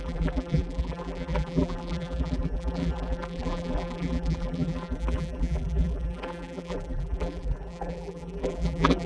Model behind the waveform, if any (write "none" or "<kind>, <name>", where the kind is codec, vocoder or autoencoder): vocoder, BigVGAN v2